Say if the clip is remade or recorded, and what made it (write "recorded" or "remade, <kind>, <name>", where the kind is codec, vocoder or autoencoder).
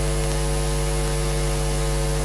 recorded